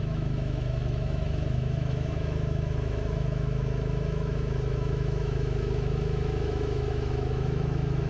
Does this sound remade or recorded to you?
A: remade